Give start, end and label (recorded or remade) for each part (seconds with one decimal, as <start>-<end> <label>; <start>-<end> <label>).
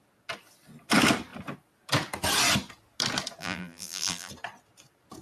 0.0-3.4 recorded; 3.4-4.3 remade; 4.3-5.2 recorded